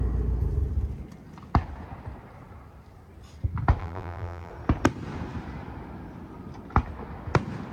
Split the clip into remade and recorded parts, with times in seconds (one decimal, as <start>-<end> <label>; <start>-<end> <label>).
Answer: 0.0-3.8 recorded; 3.8-4.5 remade; 4.5-7.7 recorded